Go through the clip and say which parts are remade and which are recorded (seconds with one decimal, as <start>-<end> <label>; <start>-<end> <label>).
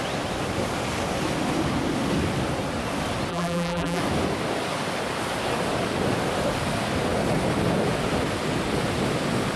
0.0-3.3 recorded; 3.3-4.0 remade; 4.0-9.6 recorded